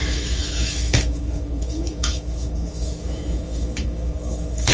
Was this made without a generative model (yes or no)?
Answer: no